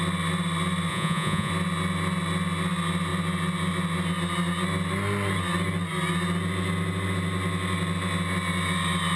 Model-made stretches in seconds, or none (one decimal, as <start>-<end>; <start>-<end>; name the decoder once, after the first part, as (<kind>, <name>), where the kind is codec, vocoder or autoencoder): 0.9-1.5 (vocoder, Vocos)